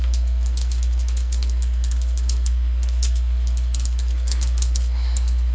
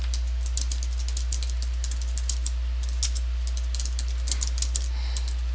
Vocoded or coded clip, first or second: first